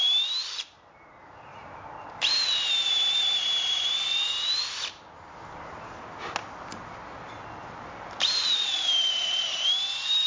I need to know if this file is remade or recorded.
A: recorded